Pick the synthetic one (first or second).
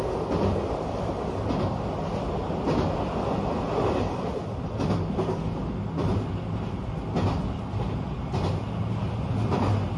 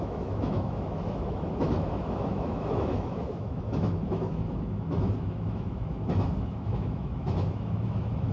second